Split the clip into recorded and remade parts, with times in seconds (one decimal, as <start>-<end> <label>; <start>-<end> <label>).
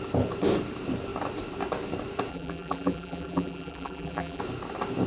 0.0-2.3 recorded; 2.3-4.4 remade; 4.4-5.1 recorded